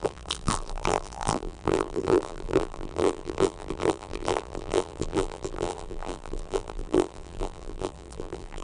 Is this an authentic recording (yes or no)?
no